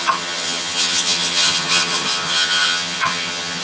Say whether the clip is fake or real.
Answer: fake